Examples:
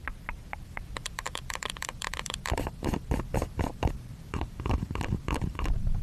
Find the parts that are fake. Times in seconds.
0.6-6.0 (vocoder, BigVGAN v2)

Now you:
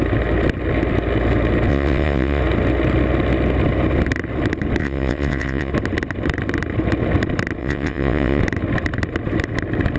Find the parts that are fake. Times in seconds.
1.7-2.4 (vocoder, WaveNeXt); 4.8-5.7; 7.6-8.4

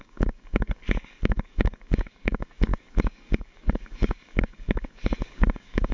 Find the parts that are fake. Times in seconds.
0.0-5.9 (codec, DAC)

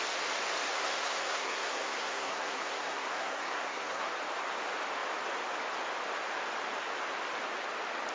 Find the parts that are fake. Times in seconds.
0.7-4.1 (codec, SNAC)

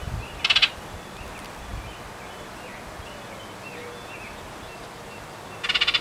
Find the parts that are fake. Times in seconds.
none

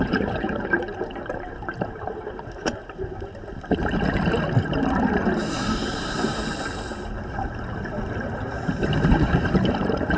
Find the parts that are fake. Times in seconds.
0.0-3.5 (vocoder, BigVGAN v2); 4.6-10.2

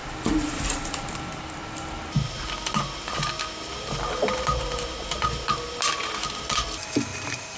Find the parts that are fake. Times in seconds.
0.0-1.0 (vocoder, BigVGAN v2); 7.1-7.6

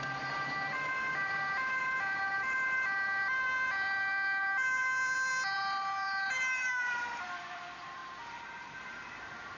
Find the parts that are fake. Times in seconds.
0.0-9.6 (vocoder, BigVGAN v2)